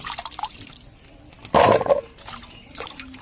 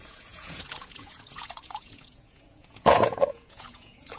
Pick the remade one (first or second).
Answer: second